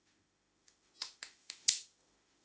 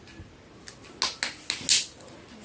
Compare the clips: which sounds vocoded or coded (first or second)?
first